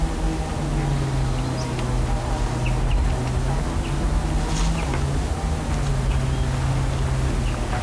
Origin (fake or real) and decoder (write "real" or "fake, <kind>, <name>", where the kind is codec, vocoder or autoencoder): real